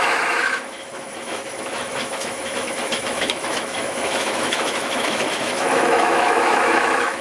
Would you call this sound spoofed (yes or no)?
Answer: yes